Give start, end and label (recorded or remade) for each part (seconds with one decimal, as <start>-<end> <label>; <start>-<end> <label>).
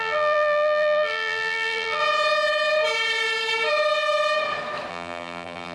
0.0-2.0 remade; 2.0-4.9 recorded; 4.9-5.7 remade